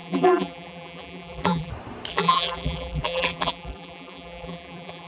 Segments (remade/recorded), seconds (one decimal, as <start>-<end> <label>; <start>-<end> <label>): 0.0-1.7 remade; 1.7-2.1 recorded; 2.1-5.1 remade

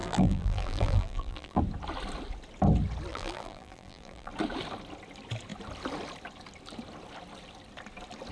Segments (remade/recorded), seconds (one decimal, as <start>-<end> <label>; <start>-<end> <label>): 0.0-1.6 remade; 1.6-3.1 recorded; 3.1-4.3 remade; 4.3-8.3 recorded

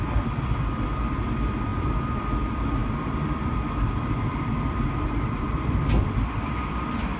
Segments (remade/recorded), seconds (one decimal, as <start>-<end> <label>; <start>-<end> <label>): 0.0-1.7 recorded; 1.7-2.2 remade; 2.2-2.8 recorded; 2.8-5.8 remade; 5.8-7.2 recorded

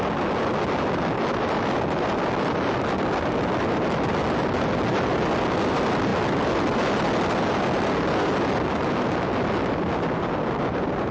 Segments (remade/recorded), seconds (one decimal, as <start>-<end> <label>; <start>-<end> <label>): 0.0-11.1 recorded

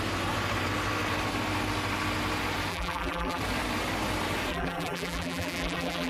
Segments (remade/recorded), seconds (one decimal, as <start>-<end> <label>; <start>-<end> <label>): 0.0-2.7 recorded; 2.7-3.4 remade; 3.4-4.5 recorded; 4.5-6.1 remade

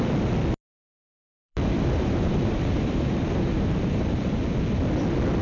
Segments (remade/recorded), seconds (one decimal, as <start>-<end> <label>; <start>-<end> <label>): 0.0-1.2 recorded; 1.2-4.4 remade; 4.4-5.4 recorded